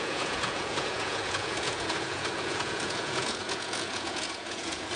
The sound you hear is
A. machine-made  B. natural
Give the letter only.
A